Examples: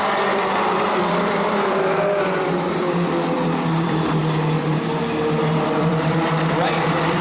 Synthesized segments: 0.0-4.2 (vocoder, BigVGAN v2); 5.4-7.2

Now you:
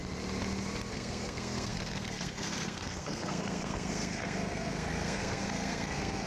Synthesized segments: 0.9-6.3 (codec, SNAC)

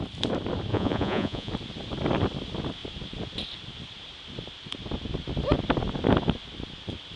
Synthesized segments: 0.7-1.5 (vocoder, Vocos)